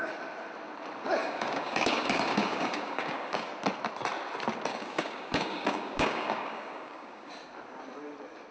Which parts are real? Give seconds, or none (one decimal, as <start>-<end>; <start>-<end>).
0.0-1.2; 3.5-4.7; 7.3-8.5